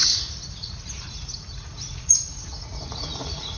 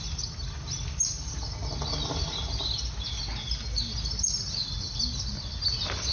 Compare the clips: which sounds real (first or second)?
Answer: second